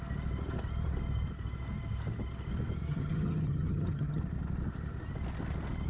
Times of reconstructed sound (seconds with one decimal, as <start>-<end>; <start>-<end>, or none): 2.9-4.2